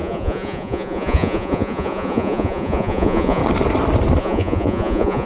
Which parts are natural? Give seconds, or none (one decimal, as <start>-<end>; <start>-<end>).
3.4-4.2